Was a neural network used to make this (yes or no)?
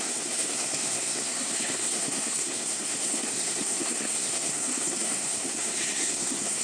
yes